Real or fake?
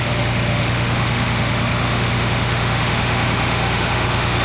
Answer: fake